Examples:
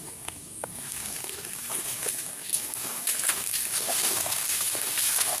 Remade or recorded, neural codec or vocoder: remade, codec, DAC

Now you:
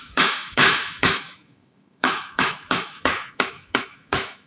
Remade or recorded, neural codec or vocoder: remade, autoencoder, DAC-VAE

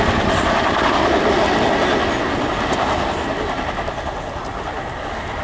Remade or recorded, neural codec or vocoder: recorded